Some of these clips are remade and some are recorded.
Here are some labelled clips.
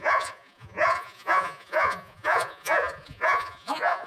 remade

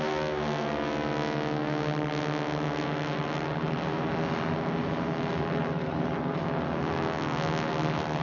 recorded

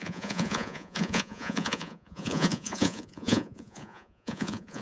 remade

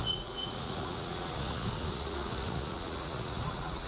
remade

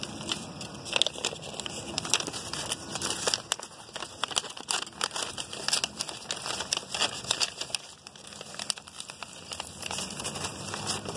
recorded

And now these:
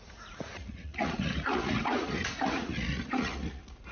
remade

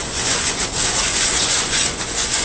remade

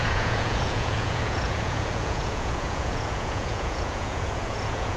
remade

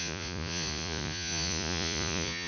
remade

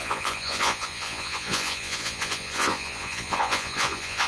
remade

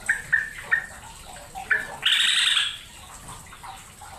recorded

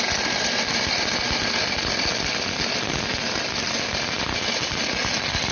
recorded